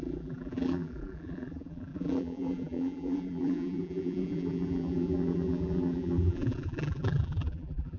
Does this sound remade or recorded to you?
remade